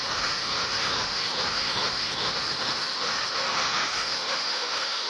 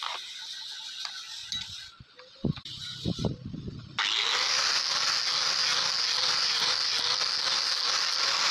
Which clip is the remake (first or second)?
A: first